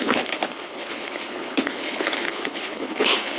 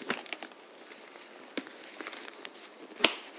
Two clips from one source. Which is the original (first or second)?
second